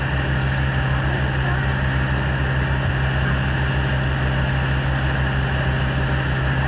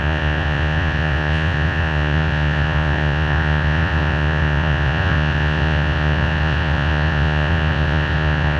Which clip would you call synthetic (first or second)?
second